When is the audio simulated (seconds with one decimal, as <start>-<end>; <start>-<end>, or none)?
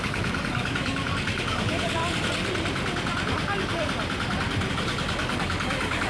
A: 0.0-2.0; 4.7-6.1